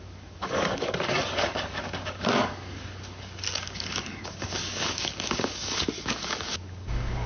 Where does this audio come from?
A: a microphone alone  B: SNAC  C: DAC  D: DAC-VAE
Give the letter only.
C